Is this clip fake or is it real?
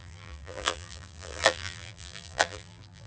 fake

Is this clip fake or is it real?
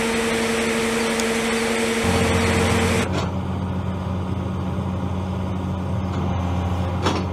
real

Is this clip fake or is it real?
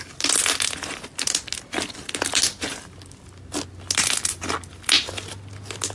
real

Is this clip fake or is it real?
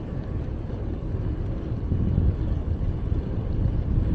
real